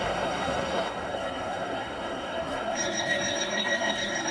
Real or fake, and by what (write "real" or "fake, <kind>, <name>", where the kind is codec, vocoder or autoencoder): fake, codec, SNAC